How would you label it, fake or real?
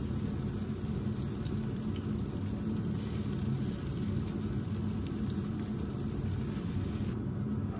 real